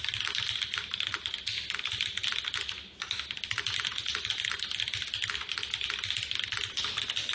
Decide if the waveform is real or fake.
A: real